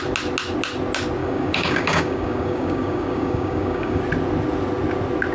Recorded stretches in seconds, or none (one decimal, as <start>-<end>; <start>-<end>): 0.0-1.2; 4.0-5.3